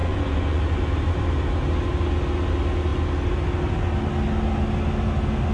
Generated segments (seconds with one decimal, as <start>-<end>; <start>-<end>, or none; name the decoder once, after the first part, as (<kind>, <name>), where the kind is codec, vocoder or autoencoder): 0.0-0.6 (vocoder, Vocos)